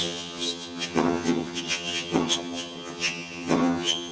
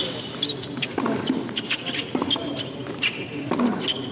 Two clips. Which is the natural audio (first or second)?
second